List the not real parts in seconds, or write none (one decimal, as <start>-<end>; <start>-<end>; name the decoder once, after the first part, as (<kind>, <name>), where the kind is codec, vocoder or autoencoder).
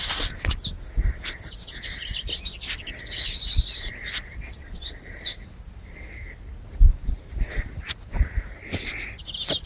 7.0-8.9 (vocoder, BigVGAN v2)